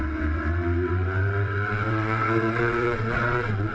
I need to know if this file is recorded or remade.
remade